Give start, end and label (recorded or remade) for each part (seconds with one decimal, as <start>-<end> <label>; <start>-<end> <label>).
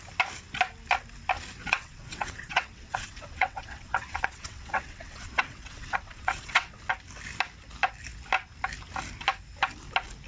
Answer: 0.0-1.6 recorded; 1.6-6.9 remade; 6.9-10.3 recorded